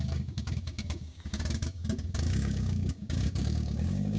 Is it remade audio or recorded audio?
remade